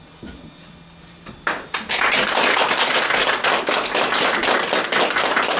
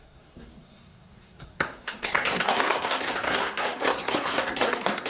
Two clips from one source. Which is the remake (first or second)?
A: second